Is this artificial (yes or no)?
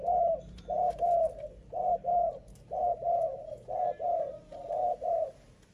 yes